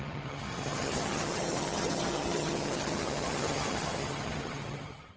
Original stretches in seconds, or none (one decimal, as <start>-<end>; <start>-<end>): none